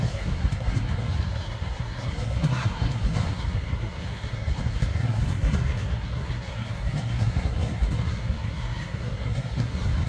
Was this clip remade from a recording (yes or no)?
yes